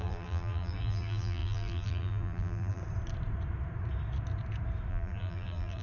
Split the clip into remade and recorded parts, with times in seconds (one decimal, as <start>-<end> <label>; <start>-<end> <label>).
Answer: 0.0-2.8 remade; 2.8-4.9 recorded; 4.9-5.8 remade